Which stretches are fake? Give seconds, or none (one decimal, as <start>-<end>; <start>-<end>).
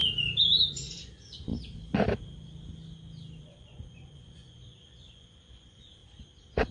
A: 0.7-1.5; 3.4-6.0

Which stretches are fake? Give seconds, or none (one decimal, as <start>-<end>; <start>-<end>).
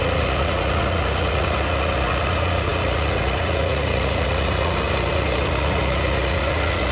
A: 0.0-6.9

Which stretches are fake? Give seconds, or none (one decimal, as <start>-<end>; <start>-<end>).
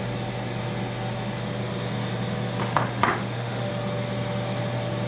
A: 2.6-3.7